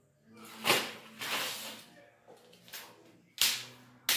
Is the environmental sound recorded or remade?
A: recorded